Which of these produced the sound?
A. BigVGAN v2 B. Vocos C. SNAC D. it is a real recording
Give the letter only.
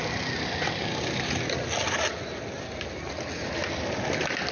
D